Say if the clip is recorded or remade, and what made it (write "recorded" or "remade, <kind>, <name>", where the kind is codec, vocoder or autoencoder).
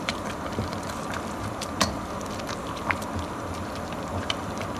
remade, vocoder, BigVGAN v2